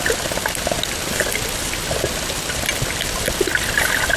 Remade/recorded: recorded